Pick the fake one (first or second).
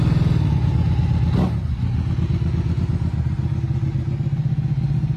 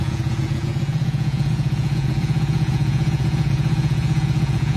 second